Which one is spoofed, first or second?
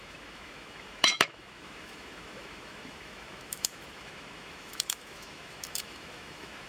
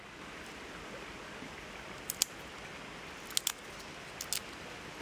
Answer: first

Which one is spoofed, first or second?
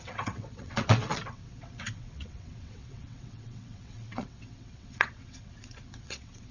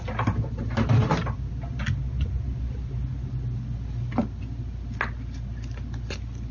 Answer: first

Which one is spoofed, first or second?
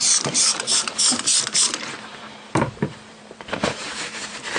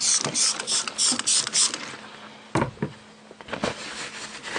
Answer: first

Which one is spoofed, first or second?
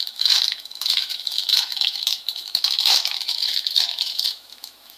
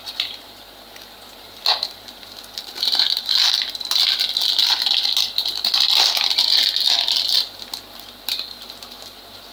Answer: first